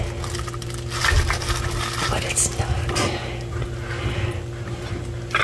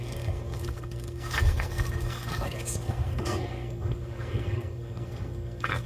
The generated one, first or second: second